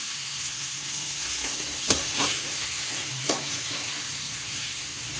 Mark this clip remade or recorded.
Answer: remade